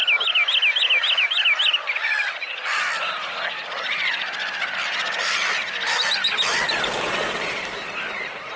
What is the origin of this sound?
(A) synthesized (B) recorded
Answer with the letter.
B